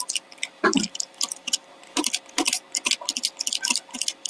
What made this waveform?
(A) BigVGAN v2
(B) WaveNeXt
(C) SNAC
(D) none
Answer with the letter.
A